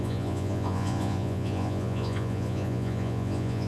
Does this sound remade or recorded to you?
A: remade